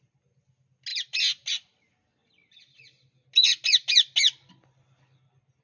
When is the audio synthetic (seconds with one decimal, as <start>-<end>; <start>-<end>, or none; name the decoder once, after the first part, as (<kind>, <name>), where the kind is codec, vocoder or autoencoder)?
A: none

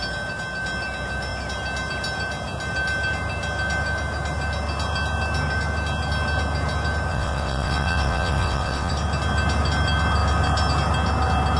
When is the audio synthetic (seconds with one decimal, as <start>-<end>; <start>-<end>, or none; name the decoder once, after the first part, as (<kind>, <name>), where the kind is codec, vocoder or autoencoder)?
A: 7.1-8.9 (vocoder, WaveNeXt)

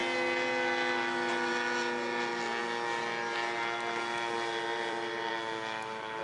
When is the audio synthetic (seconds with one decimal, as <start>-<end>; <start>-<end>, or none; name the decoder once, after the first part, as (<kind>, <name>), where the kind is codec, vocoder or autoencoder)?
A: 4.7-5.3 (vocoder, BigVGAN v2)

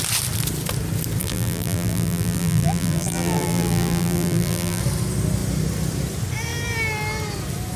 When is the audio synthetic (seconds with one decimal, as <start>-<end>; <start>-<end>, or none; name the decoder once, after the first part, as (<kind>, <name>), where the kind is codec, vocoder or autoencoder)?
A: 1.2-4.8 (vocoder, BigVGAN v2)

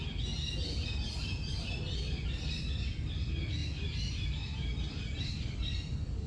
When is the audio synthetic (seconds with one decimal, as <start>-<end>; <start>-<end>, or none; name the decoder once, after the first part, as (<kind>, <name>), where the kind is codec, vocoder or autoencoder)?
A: none